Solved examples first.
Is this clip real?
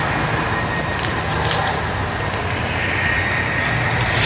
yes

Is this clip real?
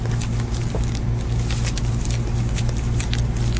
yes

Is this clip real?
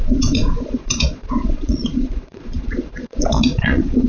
no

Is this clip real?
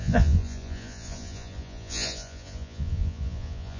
no